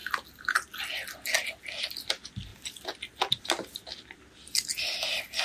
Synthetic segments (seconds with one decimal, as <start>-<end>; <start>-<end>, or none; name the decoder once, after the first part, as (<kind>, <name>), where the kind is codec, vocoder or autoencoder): none